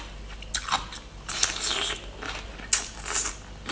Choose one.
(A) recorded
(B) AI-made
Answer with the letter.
A